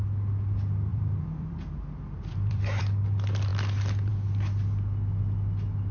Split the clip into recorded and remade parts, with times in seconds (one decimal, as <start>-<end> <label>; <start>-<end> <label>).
0.0-0.9 recorded; 0.9-2.8 remade; 2.8-5.9 recorded